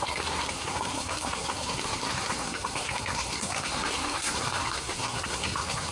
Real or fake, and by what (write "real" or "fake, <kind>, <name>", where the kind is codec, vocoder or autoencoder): fake, codec, SNAC